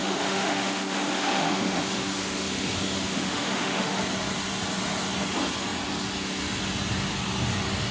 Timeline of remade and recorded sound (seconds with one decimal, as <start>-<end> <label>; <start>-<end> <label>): 0.0-4.0 remade; 4.0-7.9 recorded